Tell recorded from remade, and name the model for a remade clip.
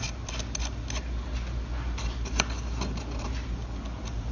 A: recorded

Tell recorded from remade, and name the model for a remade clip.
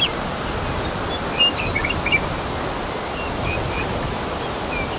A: recorded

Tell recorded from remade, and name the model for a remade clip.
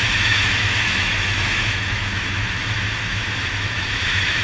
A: remade, autoencoder, DAC-VAE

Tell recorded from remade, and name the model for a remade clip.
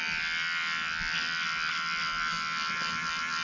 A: recorded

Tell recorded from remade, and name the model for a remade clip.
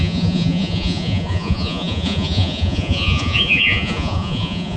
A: remade, vocoder, Vocos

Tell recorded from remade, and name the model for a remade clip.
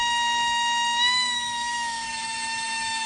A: remade, autoencoder, DAC-VAE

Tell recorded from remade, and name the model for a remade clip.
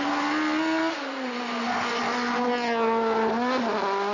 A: recorded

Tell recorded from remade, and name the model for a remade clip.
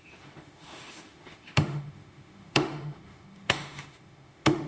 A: remade, autoencoder, DAC-VAE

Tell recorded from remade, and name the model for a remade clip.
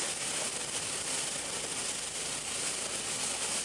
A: recorded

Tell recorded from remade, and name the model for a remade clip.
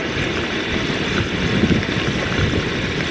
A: recorded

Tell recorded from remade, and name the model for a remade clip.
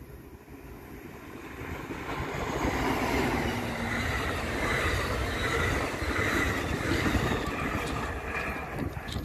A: recorded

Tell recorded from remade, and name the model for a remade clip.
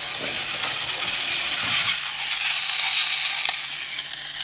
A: recorded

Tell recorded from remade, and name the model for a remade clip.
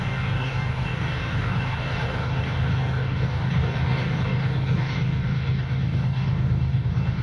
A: remade, codec, DAC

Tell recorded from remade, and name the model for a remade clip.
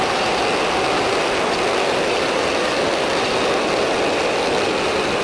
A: recorded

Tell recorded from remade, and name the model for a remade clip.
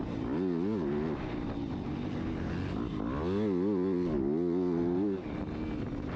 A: recorded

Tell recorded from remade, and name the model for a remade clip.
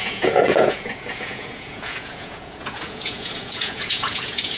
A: remade, vocoder, Vocos